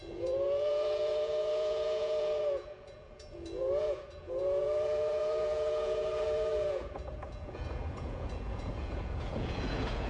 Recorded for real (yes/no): no